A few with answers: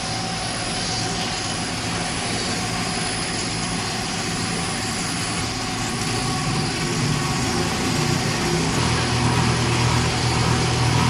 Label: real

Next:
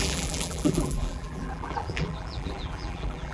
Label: fake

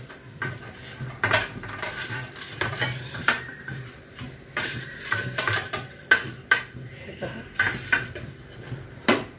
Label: fake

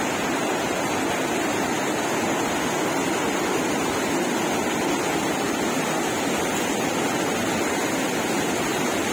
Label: real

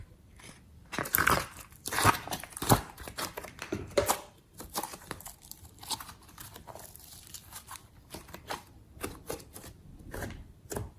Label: fake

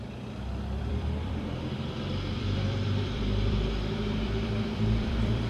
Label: fake